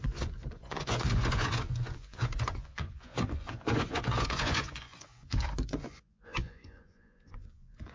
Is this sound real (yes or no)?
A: no